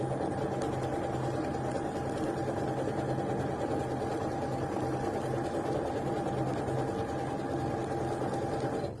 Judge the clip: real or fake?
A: real